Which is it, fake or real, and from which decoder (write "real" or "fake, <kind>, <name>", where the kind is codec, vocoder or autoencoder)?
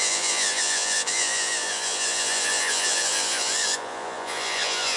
fake, vocoder, Vocos